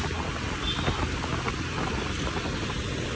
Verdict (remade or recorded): recorded